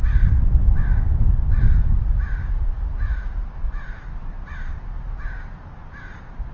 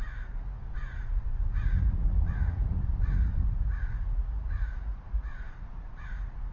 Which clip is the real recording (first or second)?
first